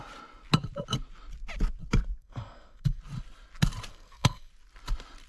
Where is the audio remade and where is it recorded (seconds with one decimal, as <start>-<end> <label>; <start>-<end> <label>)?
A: 0.0-2.2 recorded; 2.2-3.0 remade; 3.0-3.9 recorded; 3.9-4.5 remade; 4.5-5.3 recorded